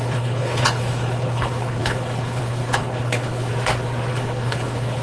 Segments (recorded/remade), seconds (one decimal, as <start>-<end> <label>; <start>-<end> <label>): 0.0-3.5 remade; 3.5-4.1 recorded; 4.1-5.0 remade